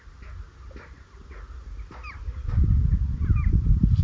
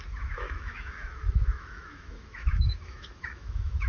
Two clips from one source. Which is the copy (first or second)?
second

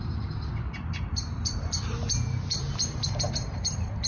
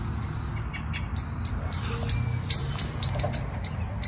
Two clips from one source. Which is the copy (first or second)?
first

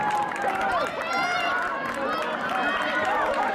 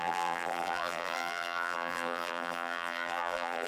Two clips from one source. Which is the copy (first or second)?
second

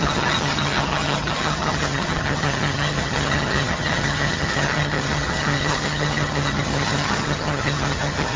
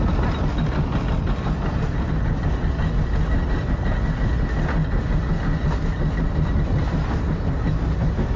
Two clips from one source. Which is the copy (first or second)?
first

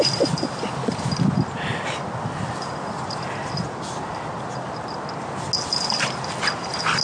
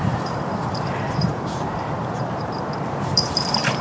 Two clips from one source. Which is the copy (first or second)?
second